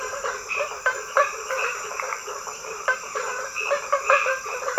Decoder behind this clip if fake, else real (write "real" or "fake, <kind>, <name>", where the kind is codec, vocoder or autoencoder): fake, vocoder, BigVGAN v2